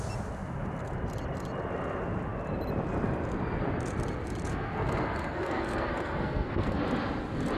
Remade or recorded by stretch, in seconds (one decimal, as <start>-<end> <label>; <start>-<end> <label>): 0.0-4.5 recorded; 4.5-6.8 remade; 6.8-7.6 recorded